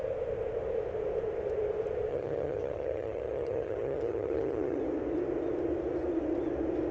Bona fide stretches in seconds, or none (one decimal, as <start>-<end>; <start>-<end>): 0.0-2.1; 4.8-6.9